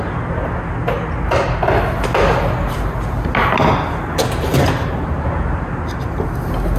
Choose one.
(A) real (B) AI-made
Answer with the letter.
A